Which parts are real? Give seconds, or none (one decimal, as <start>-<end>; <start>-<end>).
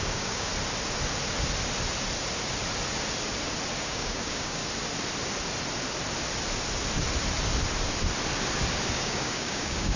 0.5-3.8; 4.6-8.9